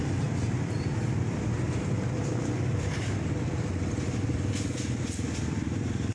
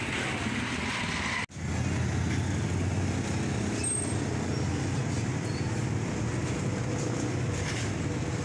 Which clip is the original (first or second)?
second